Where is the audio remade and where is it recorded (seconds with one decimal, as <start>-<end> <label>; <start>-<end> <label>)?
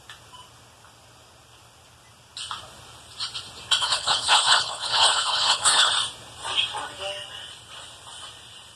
0.0-3.8 recorded; 3.8-5.9 remade; 5.9-8.8 recorded